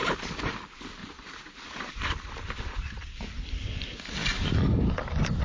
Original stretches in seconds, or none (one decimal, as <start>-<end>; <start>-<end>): 0.5-1.0; 3.4-5.4

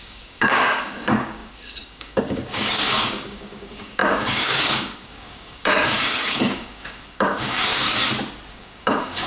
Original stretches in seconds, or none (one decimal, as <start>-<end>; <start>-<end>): 8.0-8.5

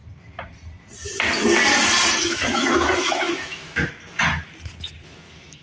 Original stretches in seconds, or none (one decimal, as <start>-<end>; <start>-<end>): 0.0-2.2; 3.9-5.6

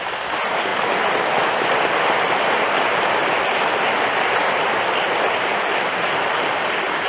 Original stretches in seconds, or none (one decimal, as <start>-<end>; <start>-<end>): 0.0-7.1

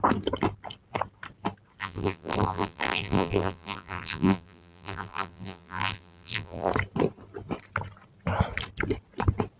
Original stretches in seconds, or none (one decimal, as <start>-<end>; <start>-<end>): 0.0-1.8; 6.7-9.6

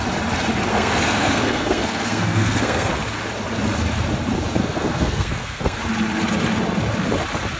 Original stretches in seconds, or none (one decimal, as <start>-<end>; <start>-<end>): 0.0-0.7; 2.9-4.6; 5.8-7.6

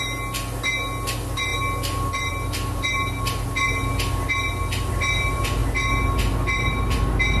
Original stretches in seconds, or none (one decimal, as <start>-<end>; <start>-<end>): 0.0-7.4

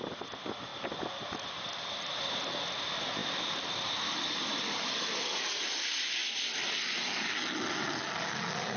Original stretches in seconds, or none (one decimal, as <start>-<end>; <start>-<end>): 0.0-3.2; 5.2-8.8